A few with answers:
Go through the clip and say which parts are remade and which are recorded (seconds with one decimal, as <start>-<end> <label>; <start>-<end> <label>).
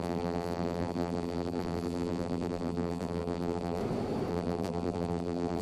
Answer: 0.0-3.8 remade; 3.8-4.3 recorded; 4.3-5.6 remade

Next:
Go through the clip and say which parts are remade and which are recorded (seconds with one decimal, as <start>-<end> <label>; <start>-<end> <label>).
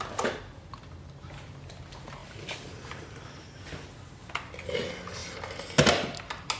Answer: 0.0-2.2 recorded; 2.2-3.9 remade; 3.9-6.6 recorded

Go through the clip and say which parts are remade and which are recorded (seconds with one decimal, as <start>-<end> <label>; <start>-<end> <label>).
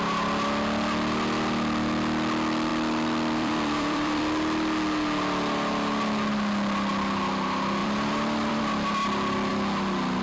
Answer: 0.0-2.7 recorded; 2.7-4.2 remade; 4.2-7.8 recorded; 7.8-8.6 remade; 8.6-10.2 recorded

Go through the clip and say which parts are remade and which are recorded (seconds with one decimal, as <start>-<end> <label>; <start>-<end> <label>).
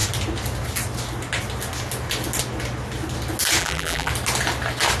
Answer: 0.0-3.6 recorded; 3.6-4.1 remade; 4.1-5.0 recorded